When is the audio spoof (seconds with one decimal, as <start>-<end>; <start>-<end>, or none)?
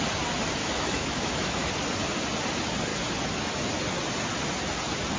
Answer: 0.6-1.7